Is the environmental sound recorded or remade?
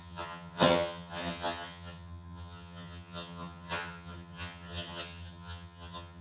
remade